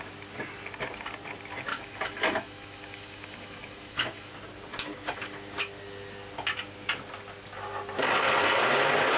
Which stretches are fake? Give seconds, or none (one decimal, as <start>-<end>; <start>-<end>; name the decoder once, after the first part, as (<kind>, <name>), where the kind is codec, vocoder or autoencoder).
1.7-4.3 (autoencoder, DAC-VAE)